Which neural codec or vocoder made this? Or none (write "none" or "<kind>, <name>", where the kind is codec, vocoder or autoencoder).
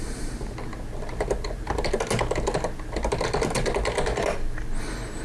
none